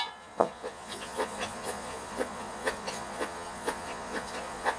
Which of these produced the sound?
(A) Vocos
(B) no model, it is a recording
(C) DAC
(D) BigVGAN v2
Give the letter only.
A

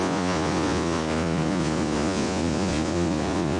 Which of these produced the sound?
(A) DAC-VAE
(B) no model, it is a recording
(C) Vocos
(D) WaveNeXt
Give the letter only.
C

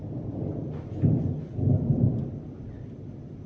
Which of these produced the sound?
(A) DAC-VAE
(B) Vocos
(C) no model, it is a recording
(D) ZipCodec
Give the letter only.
C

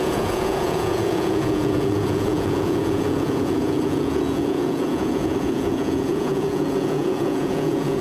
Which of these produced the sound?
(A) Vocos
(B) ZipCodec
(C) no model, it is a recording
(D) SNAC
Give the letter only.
A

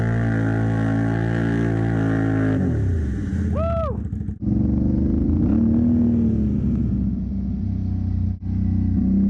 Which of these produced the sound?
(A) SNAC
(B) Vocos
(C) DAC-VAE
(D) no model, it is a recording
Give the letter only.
D